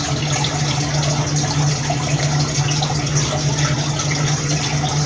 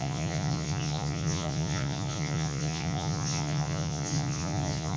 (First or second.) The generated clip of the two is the second